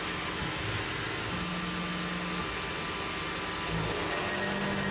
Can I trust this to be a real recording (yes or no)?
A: yes